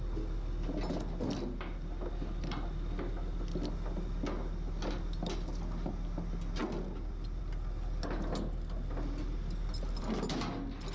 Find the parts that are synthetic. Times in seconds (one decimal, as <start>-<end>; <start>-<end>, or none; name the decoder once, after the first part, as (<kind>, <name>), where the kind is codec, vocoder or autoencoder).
none